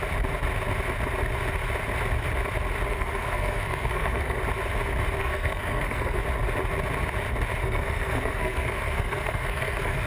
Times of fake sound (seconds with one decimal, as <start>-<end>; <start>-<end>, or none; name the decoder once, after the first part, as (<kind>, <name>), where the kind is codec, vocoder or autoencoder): 2.9-4.4 (codec, SNAC); 5.2-6.2; 7.6-10.1